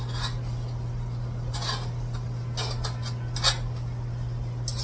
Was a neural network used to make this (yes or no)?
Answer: no